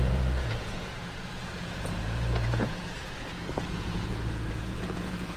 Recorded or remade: remade